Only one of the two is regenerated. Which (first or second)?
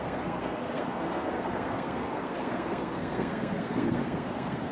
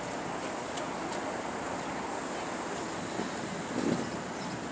first